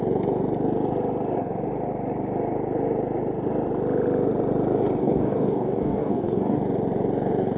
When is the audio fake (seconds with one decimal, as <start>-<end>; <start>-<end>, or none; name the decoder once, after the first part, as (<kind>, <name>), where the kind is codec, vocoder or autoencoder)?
5.0-6.6 (codec, DAC)